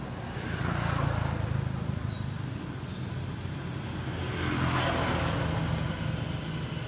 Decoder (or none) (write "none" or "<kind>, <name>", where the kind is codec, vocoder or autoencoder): none